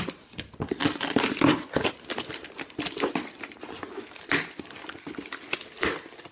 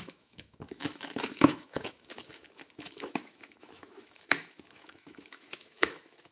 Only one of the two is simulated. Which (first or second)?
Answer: second